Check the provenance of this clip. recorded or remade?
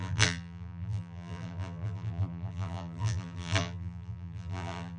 remade